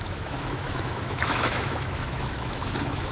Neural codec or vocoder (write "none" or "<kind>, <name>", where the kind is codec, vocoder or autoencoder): autoencoder, DAC-VAE